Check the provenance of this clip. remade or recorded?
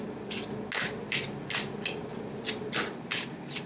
recorded